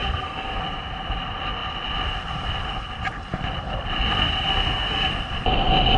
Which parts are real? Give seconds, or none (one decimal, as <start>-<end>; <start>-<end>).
0.6-4.2; 5.1-6.0